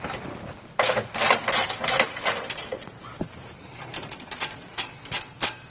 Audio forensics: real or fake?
real